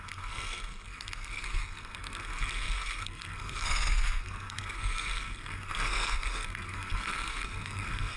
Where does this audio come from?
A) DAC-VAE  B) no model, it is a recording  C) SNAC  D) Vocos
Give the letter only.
C